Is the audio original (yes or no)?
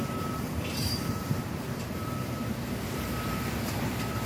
no